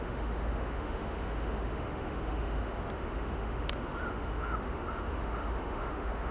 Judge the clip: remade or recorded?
remade